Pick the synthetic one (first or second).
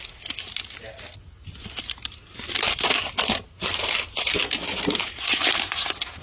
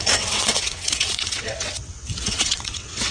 second